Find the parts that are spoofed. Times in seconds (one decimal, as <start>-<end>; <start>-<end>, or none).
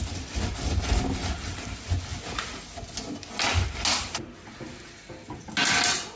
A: none